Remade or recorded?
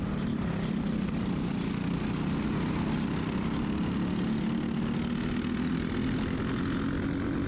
recorded